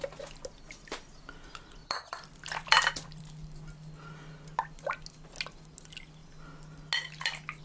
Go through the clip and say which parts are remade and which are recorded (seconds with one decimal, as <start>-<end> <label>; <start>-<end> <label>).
0.0-1.8 recorded; 1.8-3.2 remade; 3.2-7.6 recorded